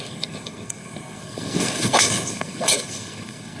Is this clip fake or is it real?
fake